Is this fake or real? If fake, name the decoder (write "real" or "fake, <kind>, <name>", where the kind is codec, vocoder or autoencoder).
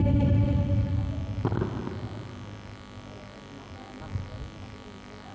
real